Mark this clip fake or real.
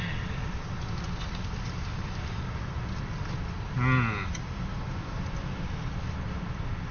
real